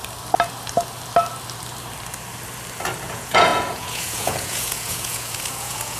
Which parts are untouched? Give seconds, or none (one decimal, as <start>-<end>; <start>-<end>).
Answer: 0.0-3.1